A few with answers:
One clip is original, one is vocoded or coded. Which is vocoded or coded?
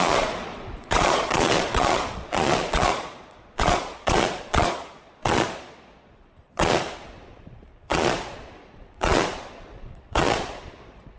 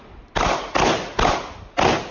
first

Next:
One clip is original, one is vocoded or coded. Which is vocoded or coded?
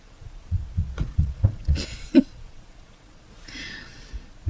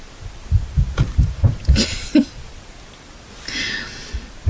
first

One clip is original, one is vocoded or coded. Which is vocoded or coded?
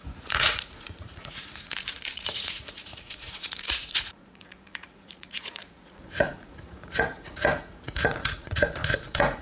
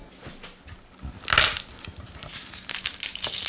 first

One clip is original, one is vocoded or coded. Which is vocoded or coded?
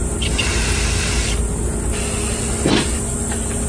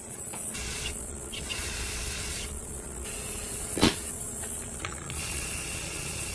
second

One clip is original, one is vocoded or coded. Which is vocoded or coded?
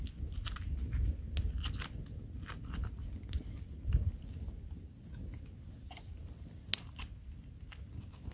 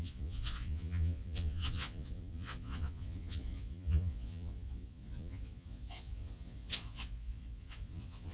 second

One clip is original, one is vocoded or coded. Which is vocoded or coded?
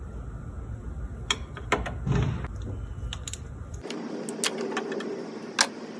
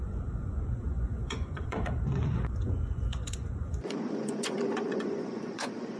second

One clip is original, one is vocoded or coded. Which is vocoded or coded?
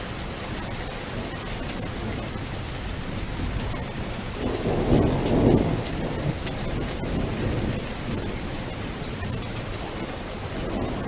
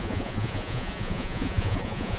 second